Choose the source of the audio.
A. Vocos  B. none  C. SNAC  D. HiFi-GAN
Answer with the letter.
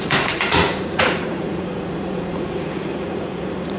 A